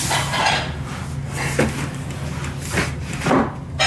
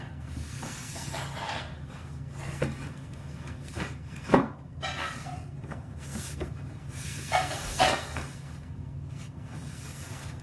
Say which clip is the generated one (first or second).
second